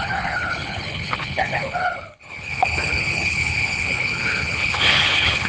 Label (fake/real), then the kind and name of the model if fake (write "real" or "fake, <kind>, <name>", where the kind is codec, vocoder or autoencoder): fake, codec, HILCodec